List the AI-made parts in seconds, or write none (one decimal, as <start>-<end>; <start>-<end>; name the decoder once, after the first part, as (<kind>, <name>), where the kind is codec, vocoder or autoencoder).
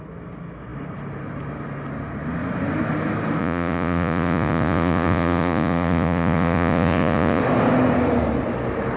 3.4-7.4 (vocoder, Vocos)